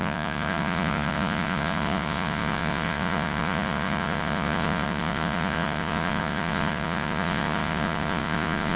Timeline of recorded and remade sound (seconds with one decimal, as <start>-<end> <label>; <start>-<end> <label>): 0.0-8.8 remade